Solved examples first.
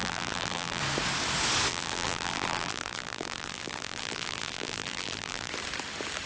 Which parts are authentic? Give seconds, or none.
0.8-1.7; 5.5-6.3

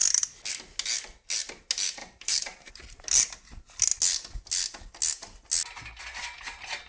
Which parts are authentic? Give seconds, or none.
0.0-2.0; 2.7-6.9

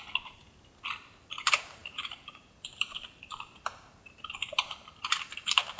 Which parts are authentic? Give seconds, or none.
0.4-1.0

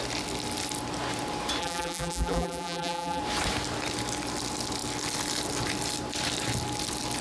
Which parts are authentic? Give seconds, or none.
0.0-1.6; 3.2-7.2

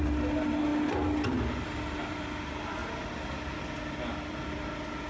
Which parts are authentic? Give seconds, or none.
0.0-5.1

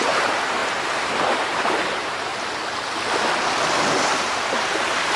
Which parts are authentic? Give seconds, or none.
2.3-4.0

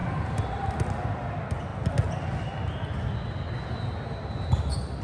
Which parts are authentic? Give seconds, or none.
0.0-5.0

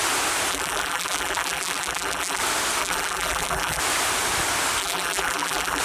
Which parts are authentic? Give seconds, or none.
0.0-0.5; 2.4-2.8; 3.8-4.8